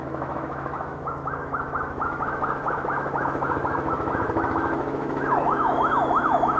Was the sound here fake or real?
fake